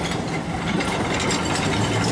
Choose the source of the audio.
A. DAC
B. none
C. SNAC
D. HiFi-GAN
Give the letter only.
B